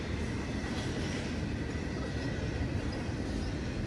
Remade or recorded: recorded